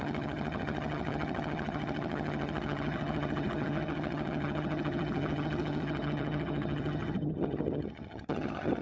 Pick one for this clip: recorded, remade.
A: remade